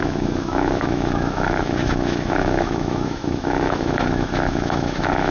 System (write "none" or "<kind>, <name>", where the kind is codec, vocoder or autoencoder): autoencoder, DAC-VAE